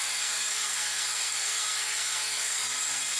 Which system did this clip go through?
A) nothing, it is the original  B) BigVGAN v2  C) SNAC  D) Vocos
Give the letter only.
C